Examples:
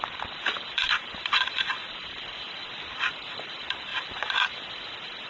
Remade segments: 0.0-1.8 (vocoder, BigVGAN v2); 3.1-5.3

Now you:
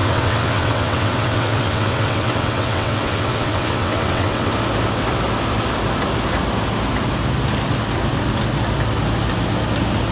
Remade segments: 0.0-4.5 (vocoder, WaveNeXt)

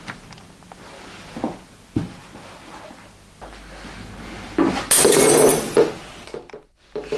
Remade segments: none

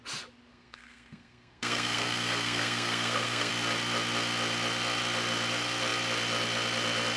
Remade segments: 0.5-3.5 (codec, SNAC)